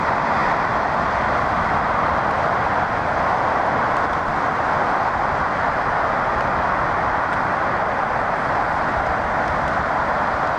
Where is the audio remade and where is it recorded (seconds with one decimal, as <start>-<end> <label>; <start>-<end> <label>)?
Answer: 0.0-10.6 recorded